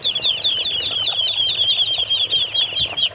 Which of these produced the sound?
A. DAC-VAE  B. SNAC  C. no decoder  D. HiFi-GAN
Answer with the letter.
C